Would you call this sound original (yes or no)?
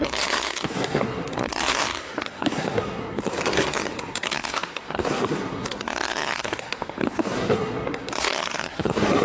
no